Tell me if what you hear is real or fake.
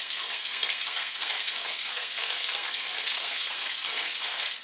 fake